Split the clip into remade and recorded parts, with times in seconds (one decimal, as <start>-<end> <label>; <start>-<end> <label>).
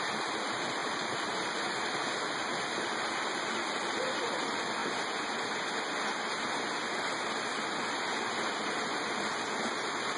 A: 0.0-10.2 recorded